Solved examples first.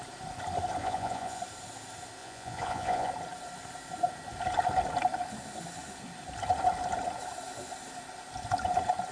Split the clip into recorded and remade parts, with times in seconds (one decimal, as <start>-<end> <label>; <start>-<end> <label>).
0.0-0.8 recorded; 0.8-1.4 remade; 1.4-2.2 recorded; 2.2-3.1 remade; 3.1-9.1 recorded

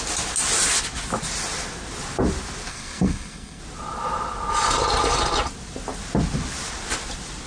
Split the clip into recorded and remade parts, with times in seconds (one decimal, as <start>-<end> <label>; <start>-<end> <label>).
0.0-2.7 recorded; 2.7-3.6 remade; 3.6-7.5 recorded

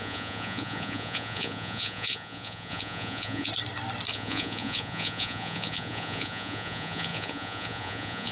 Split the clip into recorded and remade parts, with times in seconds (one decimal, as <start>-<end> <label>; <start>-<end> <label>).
0.0-3.5 remade; 3.5-4.1 recorded; 4.1-8.3 remade

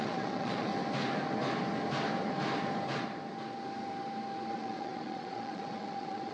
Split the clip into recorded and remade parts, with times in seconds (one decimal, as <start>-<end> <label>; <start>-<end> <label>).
0.0-0.7 remade; 0.7-4.5 recorded; 4.5-6.3 remade

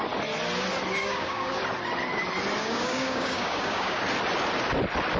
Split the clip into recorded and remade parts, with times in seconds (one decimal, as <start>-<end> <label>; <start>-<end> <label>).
0.0-1.0 recorded; 1.0-1.6 remade; 1.6-2.6 recorded; 2.6-4.0 remade; 4.0-5.2 recorded